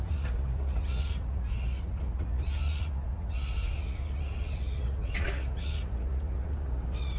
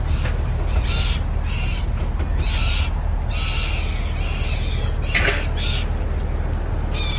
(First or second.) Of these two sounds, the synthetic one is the first